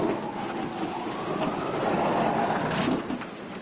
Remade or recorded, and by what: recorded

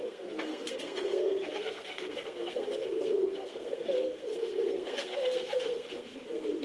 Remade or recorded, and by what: remade, codec, SNAC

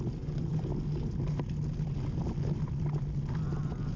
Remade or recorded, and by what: recorded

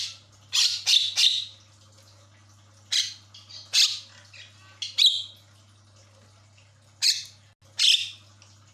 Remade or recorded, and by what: recorded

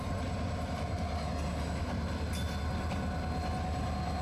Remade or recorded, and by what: recorded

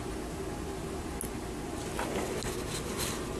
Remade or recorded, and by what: recorded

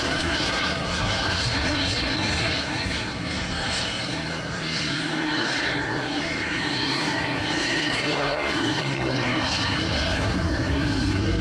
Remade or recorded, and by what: remade, codec, SNAC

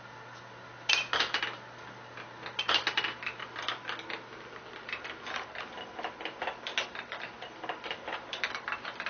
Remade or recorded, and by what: recorded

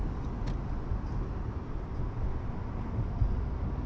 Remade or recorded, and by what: recorded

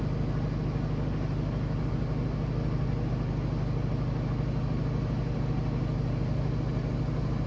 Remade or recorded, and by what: recorded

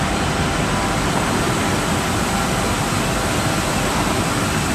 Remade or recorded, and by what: recorded